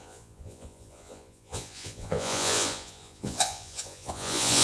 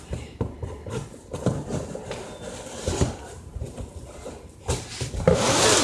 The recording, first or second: second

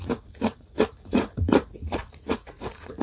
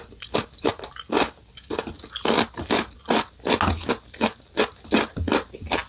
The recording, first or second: second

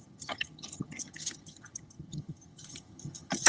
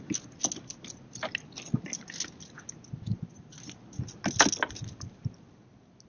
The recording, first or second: second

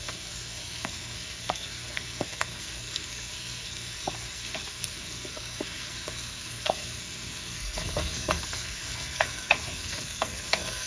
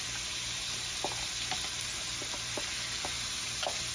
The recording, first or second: second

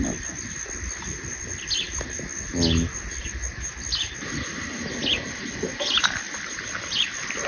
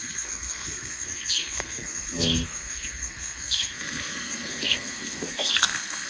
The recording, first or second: first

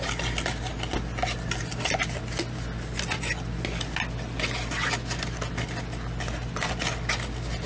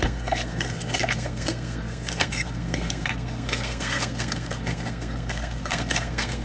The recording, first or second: first